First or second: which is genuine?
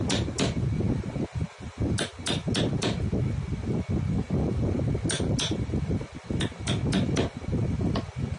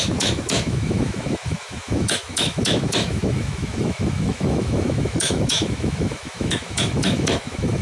first